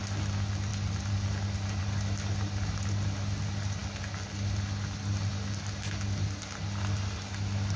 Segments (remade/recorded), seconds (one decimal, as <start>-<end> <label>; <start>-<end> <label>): 0.0-7.8 recorded